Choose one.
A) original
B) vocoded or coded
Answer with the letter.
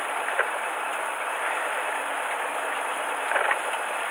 A